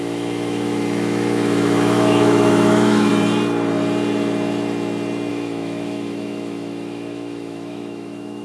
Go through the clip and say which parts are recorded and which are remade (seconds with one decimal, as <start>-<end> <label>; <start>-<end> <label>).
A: 0.0-3.1 remade; 3.1-5.3 recorded; 5.3-8.4 remade